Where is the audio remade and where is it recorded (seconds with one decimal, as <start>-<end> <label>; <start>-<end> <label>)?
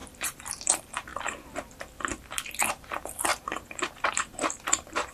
0.0-1.1 remade; 1.1-2.7 recorded; 2.7-5.1 remade